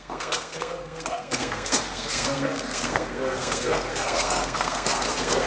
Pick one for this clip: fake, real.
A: fake